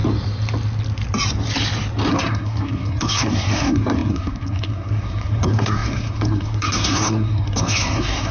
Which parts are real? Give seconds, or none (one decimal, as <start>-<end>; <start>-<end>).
0.0-2.1